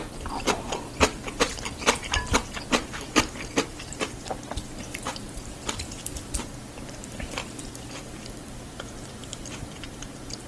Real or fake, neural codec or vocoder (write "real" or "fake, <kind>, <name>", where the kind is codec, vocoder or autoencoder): fake, vocoder, BigVGAN v2